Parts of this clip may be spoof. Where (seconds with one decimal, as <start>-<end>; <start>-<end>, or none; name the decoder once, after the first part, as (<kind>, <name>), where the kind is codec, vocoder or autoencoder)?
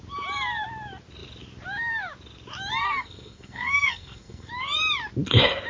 2.8-4.5 (codec, SNAC)